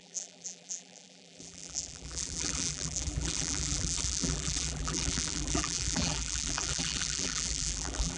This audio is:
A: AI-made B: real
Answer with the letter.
A